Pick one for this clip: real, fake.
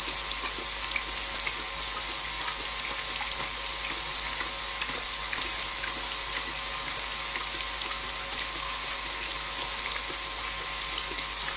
real